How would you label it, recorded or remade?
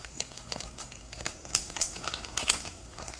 remade